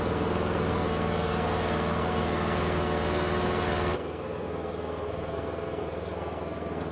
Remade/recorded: remade